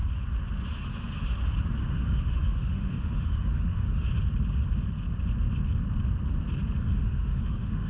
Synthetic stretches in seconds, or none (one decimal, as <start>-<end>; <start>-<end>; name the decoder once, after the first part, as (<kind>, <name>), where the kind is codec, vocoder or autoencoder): 1.8-4.1 (autoencoder, DAC-VAE); 6.8-7.9